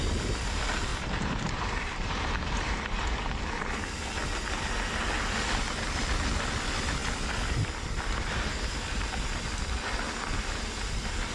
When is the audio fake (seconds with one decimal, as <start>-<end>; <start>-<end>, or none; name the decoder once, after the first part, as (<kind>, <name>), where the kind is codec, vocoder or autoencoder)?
0.9-3.2 (vocoder, BigVGAN v2)